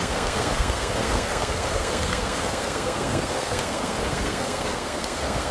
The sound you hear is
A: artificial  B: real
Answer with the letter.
A